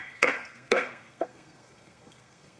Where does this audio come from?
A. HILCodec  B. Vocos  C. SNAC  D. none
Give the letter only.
C